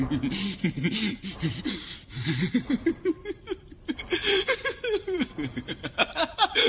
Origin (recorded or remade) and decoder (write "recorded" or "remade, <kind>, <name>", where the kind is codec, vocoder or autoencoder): recorded